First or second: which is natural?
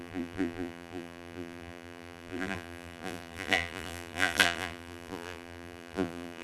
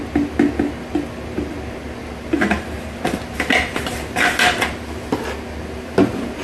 second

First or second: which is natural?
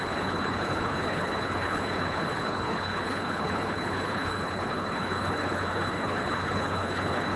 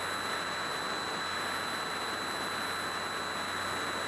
second